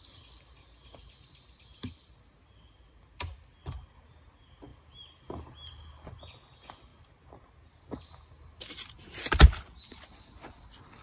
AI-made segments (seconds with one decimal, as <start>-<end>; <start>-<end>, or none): 6.9-10.2